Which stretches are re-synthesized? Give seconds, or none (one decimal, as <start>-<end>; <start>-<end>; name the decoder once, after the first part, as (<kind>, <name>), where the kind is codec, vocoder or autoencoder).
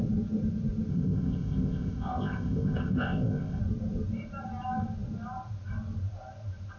0.9-3.6 (codec, ZipCodec)